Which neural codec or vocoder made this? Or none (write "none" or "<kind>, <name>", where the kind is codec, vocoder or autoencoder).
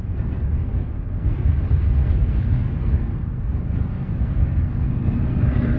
codec, SNAC